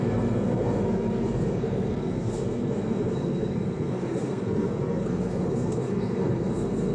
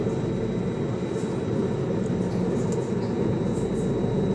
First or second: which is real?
second